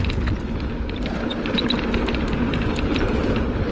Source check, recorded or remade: recorded